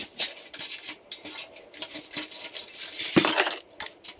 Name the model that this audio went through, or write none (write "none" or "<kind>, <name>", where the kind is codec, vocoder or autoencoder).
none